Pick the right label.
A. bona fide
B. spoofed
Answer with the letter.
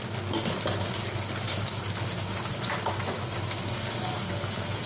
A